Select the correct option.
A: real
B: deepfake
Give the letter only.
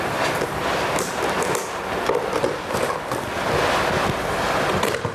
A